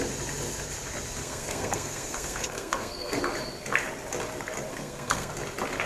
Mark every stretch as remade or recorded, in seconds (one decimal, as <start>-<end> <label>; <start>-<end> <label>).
0.0-1.2 recorded; 1.2-3.2 remade; 3.2-4.7 recorded; 4.7-5.3 remade; 5.3-5.9 recorded